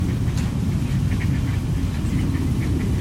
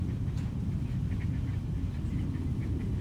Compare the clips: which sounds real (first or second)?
first